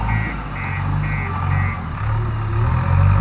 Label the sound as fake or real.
real